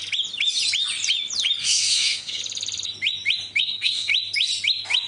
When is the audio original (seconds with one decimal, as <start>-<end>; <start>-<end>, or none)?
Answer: 0.0-1.6; 2.4-3.6; 4.1-5.1